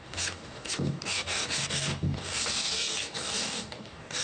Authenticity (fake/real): fake